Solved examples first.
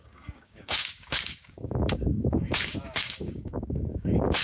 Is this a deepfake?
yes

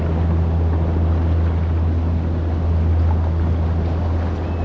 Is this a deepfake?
no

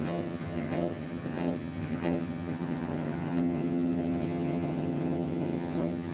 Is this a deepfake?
yes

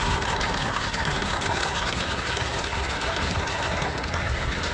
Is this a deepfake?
yes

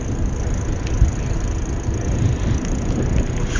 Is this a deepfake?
no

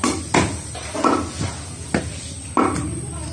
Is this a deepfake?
no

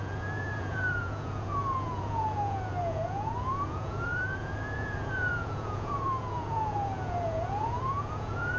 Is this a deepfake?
yes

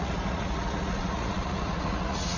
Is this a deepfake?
yes